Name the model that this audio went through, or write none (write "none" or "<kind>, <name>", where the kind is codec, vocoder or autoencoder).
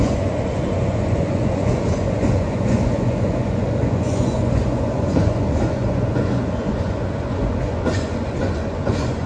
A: vocoder, Vocos